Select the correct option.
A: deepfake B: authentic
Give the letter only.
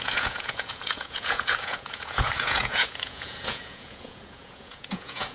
A